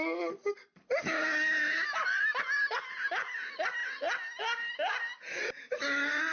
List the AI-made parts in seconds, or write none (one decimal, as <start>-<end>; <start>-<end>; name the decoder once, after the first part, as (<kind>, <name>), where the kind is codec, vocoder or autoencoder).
none